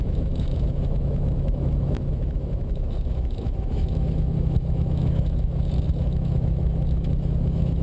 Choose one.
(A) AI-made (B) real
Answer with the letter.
A